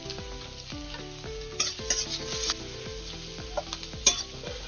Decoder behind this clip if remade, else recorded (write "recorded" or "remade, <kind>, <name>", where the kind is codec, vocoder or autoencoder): recorded